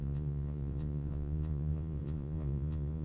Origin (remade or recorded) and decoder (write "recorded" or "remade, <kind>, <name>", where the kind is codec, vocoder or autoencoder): remade, vocoder, Vocos